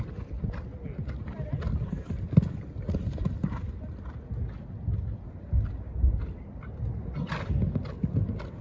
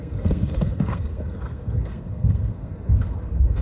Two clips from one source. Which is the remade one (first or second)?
second